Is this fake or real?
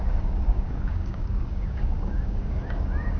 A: fake